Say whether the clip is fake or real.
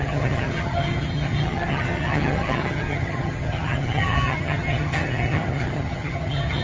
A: fake